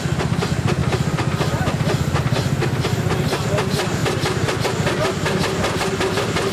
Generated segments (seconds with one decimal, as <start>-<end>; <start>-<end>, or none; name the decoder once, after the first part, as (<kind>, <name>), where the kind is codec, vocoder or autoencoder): 0.8-2.2 (vocoder, BigVGAN v2)